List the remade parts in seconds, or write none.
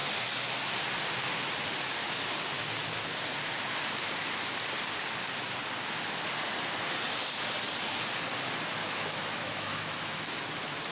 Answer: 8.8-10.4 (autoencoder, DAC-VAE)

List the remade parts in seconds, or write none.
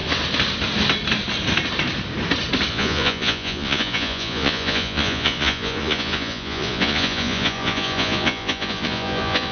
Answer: 2.7-9.5 (vocoder, Vocos)